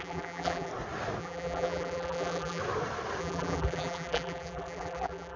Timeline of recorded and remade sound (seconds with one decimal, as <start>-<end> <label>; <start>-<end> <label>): 0.0-0.7 remade; 0.7-1.2 recorded; 1.2-2.6 remade; 2.6-3.2 recorded; 3.2-5.4 remade